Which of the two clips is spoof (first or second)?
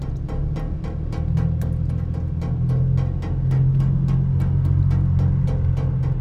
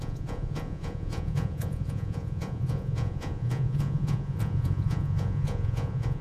second